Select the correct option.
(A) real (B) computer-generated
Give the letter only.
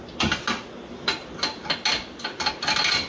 A